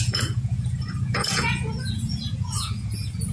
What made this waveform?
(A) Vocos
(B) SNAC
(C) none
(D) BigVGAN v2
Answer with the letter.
A